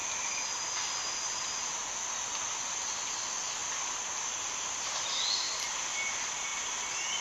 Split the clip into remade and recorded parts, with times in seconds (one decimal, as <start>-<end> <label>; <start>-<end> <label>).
0.0-7.2 recorded